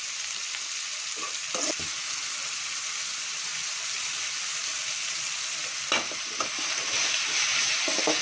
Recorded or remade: recorded